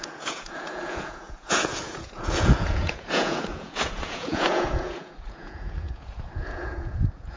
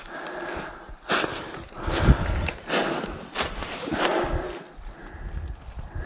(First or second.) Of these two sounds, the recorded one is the second